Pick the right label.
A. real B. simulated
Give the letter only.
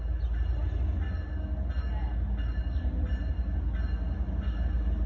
A